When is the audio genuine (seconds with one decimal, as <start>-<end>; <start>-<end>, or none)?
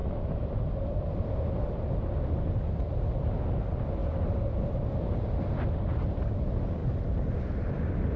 0.6-8.2